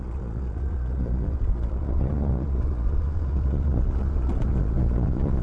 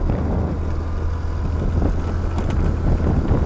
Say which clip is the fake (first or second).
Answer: first